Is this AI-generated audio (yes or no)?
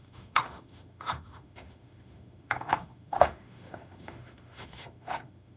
yes